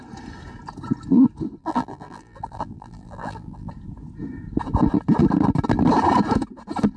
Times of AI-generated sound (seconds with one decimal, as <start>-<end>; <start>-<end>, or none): 1.6-3.7